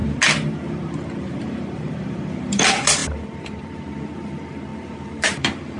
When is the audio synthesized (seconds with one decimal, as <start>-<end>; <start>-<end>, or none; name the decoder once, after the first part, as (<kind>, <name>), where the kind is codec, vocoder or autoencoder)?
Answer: 1.3-5.8 (vocoder, BigVGAN v2)